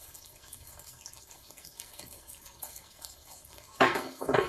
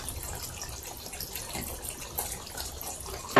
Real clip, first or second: second